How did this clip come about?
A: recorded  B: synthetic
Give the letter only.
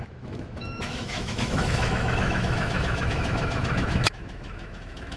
B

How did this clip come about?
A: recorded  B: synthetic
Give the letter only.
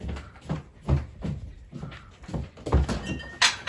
A